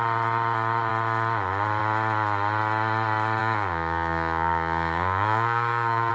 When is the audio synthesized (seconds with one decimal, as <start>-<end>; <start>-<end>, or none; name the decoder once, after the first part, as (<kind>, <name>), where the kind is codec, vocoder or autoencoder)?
3.4-6.1 (codec, DAC)